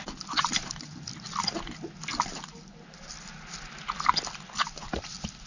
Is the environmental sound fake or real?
real